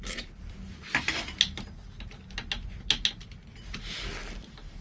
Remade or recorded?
recorded